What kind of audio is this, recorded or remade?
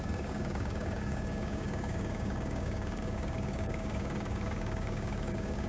remade